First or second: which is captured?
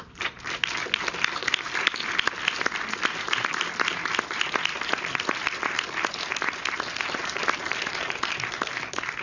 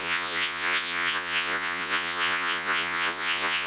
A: first